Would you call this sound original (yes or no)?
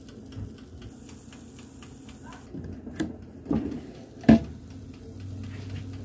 yes